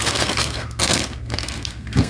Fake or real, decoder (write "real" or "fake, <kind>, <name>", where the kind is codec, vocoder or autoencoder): fake, codec, SNAC